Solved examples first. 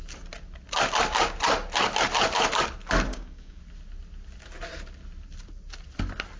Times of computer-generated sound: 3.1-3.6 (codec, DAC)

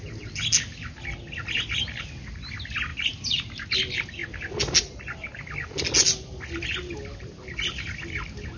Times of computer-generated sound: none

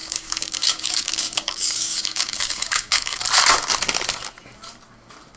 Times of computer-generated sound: 0.0-3.2 (codec, DAC)

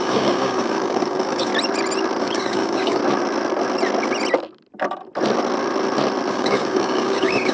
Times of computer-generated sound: 0.0-1.5 (codec, DAC); 2.2-3.0; 6.3-7.5

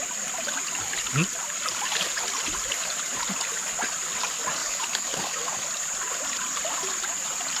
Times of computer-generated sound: 4.6-5.7 (codec, DAC)